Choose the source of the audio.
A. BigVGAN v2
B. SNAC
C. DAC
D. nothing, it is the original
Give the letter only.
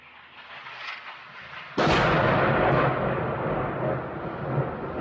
D